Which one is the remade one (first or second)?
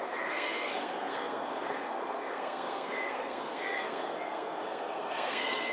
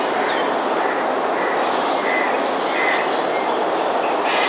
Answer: first